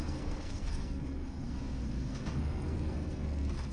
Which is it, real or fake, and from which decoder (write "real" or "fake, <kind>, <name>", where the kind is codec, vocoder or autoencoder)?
fake, codec, SNAC